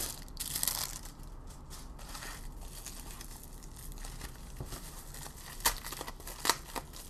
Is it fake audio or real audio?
real